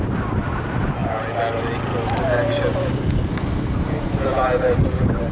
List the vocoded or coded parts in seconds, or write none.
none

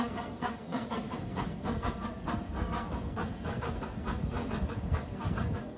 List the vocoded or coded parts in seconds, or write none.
0.0-5.8

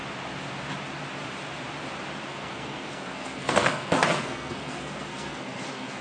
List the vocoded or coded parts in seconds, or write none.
2.3-6.0

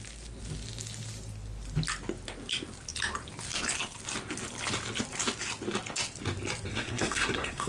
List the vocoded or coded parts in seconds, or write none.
6.7-7.7

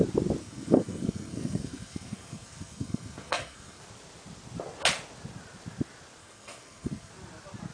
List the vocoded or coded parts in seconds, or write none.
0.4-3.8; 6.2-7.1

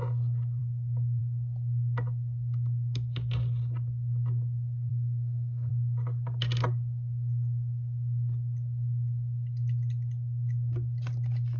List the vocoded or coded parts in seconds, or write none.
4.9-5.7